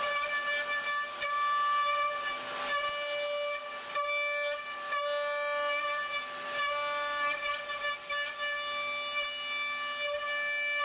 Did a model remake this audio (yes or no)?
no